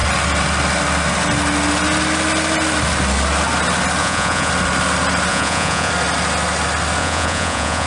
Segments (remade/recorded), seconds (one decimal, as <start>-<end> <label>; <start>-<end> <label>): 0.0-4.0 recorded; 4.0-4.5 remade; 4.5-5.3 recorded; 5.3-5.9 remade; 5.9-7.0 recorded; 7.0-7.9 remade